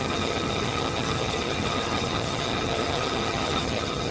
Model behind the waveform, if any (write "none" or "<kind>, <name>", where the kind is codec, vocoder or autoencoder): vocoder, HiFi-GAN